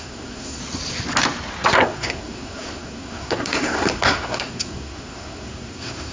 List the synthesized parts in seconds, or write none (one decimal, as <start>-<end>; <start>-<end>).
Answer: 0.0-0.6; 1.8-6.1